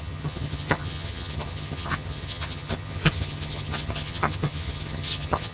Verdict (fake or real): fake